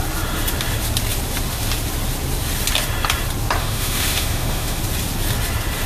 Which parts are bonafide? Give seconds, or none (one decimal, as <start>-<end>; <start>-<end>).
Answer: 0.0-3.6; 4.8-5.9